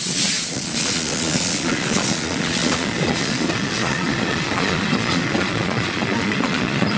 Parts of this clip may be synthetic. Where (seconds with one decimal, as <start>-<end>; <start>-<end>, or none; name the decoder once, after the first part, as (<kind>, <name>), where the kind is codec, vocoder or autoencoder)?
0.0-7.0 (vocoder, Vocos)